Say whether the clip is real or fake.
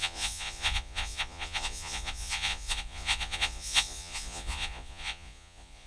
fake